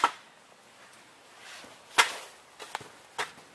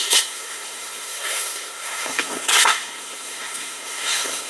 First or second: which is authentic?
first